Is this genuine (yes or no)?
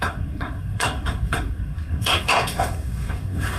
no